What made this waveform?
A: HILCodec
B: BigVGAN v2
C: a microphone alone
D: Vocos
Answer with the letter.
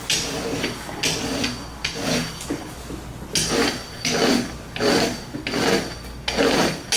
C